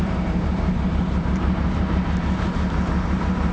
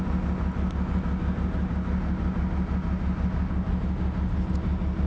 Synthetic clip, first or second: first